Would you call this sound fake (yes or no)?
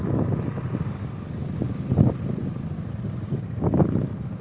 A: no